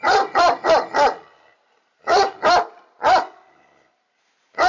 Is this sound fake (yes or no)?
no